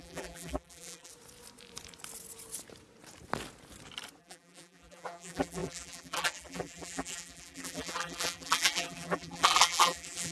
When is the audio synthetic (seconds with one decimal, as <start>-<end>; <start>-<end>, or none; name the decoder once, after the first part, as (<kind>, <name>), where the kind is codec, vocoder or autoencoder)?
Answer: 0.0-1.1 (vocoder, BigVGAN v2); 4.2-10.3